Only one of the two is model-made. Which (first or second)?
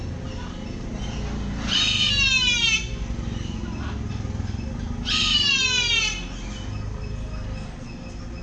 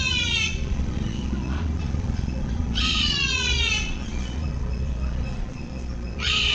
second